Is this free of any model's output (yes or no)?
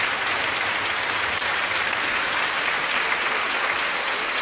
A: yes